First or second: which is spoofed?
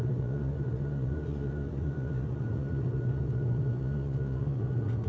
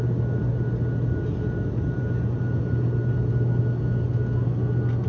first